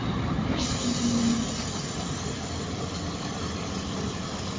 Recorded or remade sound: recorded